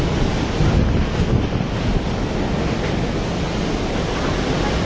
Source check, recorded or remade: recorded